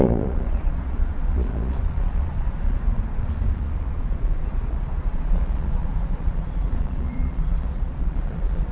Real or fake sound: fake